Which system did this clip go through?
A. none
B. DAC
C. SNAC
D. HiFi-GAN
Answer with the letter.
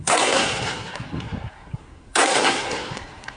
C